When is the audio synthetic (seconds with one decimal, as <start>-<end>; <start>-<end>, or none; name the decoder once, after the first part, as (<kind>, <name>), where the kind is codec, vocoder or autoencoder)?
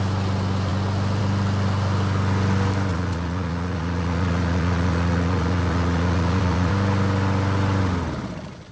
2.9-6.7 (vocoder, Vocos)